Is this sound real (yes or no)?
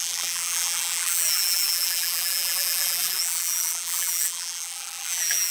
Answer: no